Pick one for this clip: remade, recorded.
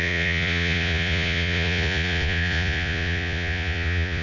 remade